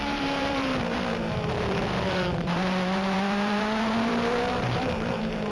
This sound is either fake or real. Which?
fake